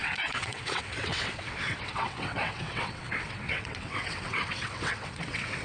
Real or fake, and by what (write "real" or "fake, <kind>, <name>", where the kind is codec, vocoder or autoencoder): fake, vocoder, WaveNeXt